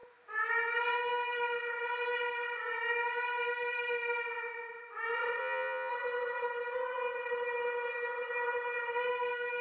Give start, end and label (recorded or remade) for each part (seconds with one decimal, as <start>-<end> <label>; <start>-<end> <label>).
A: 0.0-5.4 recorded; 5.4-5.9 remade; 5.9-9.6 recorded